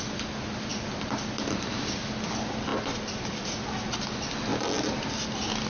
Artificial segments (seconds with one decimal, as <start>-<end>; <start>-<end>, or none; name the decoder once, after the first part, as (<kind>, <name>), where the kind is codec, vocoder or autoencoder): none